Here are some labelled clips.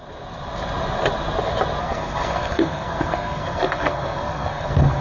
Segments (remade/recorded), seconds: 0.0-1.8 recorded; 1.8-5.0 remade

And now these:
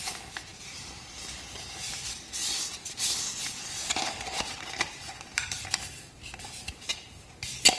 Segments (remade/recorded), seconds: 0.0-0.5 recorded; 0.5-1.1 remade; 1.1-2.4 recorded; 2.4-6.4 remade; 6.4-7.8 recorded

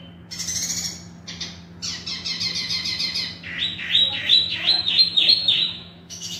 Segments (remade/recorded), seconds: 0.0-4.2 recorded; 4.2-6.4 remade

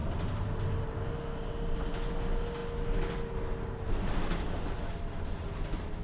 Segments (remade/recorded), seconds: 0.0-6.0 recorded

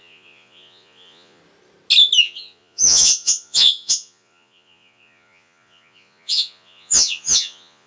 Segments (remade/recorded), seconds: 0.0-1.4 remade; 1.4-2.2 recorded; 2.2-7.9 remade